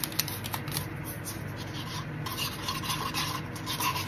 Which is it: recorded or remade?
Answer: recorded